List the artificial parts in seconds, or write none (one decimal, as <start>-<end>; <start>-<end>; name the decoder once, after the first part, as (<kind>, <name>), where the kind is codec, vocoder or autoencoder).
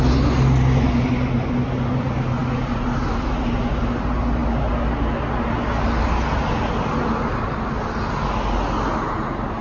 none